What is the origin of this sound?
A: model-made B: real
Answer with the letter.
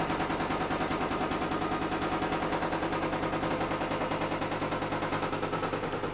B